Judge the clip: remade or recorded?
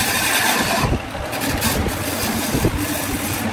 remade